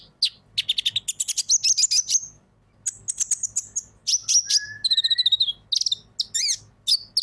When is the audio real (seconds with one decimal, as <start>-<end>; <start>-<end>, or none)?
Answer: 0.0-7.2